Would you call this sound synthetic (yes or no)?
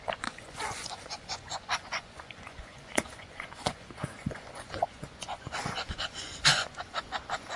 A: yes